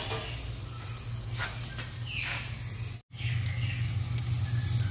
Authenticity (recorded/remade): recorded